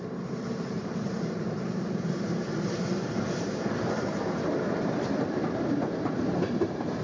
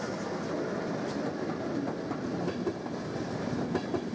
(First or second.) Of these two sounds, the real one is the second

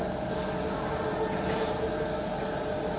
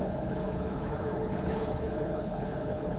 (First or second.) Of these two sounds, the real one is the first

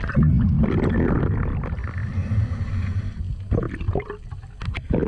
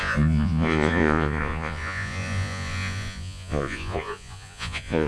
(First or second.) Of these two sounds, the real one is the first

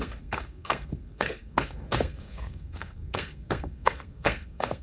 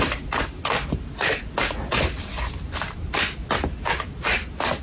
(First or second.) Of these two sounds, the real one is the second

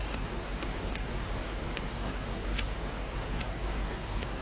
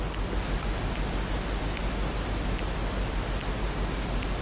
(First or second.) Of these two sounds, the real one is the second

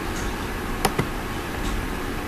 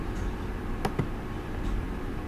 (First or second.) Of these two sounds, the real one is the second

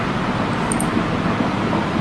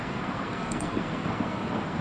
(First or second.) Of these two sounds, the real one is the first